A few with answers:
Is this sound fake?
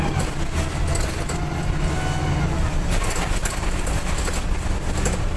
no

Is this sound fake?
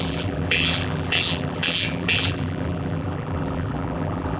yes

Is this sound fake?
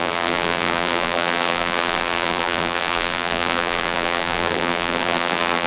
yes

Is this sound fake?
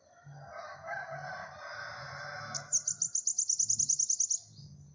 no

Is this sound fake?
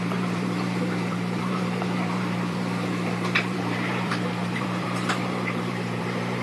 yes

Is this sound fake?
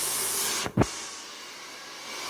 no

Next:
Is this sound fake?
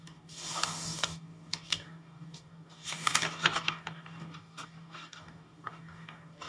yes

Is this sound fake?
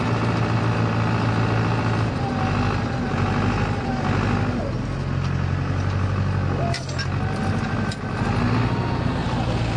no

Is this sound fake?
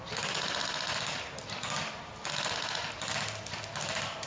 no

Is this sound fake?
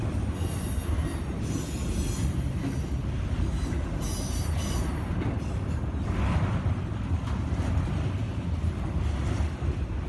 no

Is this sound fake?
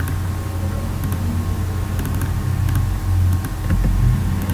no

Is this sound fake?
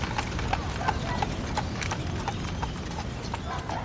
no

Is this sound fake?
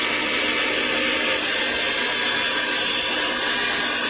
no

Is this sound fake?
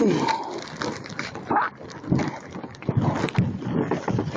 no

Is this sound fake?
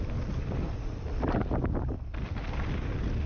no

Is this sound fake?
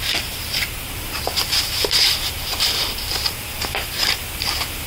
yes